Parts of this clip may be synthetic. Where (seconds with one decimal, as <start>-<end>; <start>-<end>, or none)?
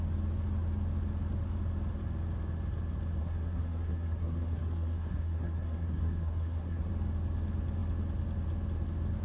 3.2-6.9